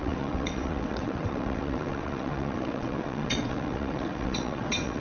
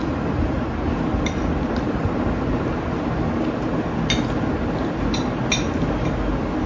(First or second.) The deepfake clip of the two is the first